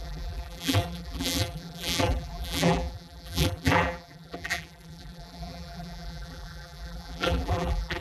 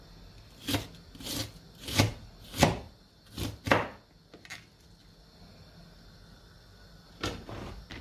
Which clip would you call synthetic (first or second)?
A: first